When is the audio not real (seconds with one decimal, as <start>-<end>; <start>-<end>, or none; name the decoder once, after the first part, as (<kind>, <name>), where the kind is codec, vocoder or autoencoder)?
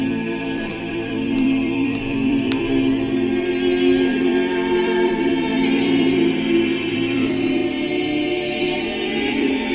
0.0-2.6 (vocoder, BigVGAN v2); 4.1-7.6; 8.6-9.7